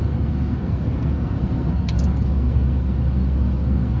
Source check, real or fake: fake